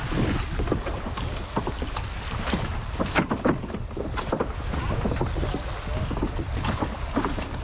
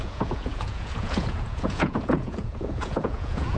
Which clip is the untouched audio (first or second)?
first